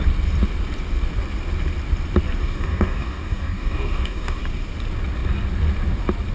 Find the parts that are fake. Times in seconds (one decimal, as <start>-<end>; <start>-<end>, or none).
2.4-4.4